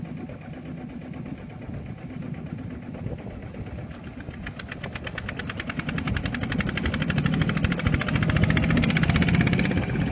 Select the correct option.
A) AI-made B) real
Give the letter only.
B